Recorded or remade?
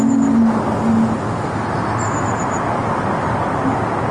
recorded